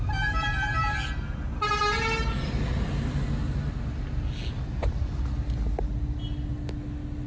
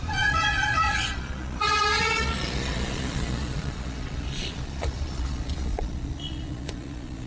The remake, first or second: second